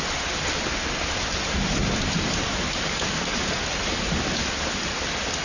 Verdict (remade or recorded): recorded